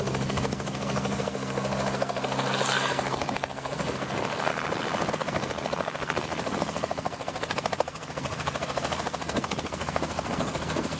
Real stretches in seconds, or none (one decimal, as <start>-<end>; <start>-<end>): 4.5-5.1